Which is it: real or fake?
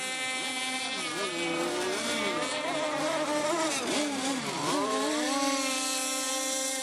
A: fake